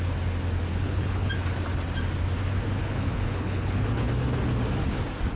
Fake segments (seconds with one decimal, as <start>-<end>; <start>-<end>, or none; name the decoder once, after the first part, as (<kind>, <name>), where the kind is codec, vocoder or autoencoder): 0.7-1.3 (codec, HILCodec); 2.8-4.1